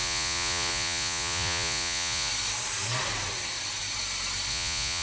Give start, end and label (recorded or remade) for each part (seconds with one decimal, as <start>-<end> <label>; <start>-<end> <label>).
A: 0.0-2.3 remade; 2.3-4.5 recorded; 4.5-5.0 remade